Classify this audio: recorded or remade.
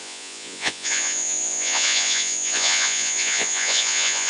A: remade